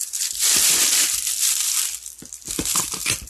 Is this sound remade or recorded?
remade